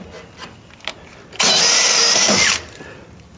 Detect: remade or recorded recorded